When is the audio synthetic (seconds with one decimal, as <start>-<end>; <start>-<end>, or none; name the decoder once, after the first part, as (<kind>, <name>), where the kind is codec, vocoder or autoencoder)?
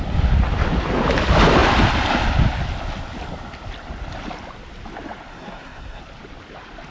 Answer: 5.3-6.0 (codec, SNAC)